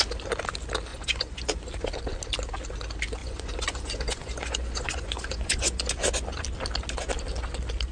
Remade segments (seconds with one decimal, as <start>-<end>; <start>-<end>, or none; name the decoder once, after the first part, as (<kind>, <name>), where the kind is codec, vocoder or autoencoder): 0.9-1.6 (vocoder, Vocos); 3.2-5.9